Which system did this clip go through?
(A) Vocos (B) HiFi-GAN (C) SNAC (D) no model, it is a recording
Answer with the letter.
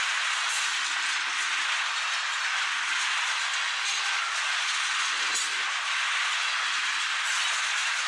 D